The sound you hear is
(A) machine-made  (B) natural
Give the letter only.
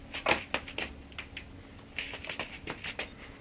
B